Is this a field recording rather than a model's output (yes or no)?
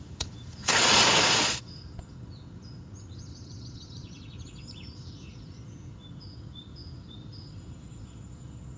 no